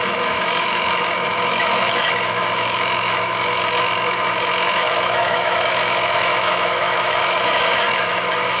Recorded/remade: remade